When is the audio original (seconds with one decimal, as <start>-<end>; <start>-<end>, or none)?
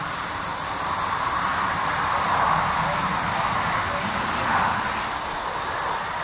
1.5-2.1; 3.1-5.8